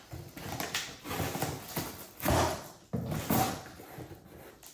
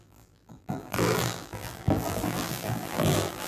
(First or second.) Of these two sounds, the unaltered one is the first